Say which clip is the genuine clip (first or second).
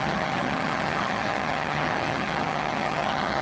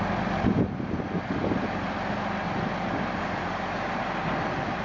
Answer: second